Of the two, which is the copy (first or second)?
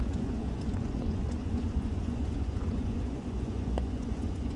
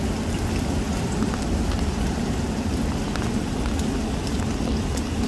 first